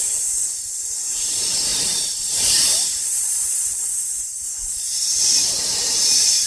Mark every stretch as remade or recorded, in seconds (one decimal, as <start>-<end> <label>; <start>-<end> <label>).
0.0-6.5 remade